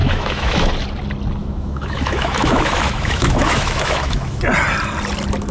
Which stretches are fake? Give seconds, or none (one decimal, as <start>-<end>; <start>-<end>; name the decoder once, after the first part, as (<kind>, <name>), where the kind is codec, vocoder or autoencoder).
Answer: 0.0-0.7 (autoencoder, DAC-VAE); 1.4-4.4